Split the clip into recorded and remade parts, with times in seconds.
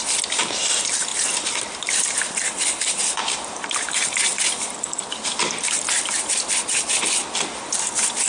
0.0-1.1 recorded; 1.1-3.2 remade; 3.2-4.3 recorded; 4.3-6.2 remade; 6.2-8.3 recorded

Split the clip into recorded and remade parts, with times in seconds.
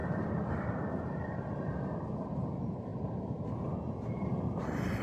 0.0-5.0 remade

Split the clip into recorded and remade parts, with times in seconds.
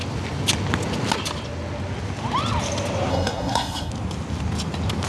0.0-3.1 recorded; 3.1-3.9 remade; 3.9-5.1 recorded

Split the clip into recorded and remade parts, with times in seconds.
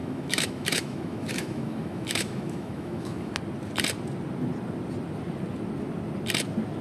0.0-3.3 remade; 3.3-6.8 recorded